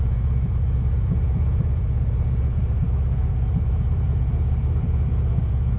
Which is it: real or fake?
fake